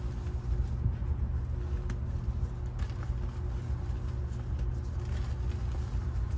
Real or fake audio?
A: real